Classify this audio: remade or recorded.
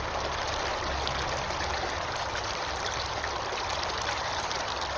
recorded